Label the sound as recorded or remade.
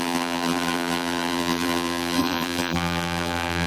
remade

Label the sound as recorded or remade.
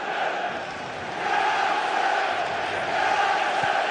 recorded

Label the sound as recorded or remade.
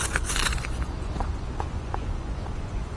remade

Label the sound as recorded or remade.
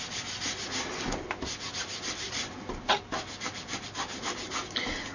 recorded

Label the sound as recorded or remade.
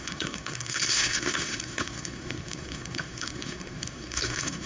remade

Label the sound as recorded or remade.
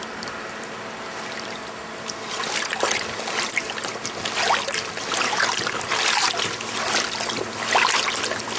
recorded